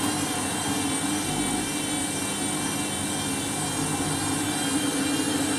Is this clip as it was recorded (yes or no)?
yes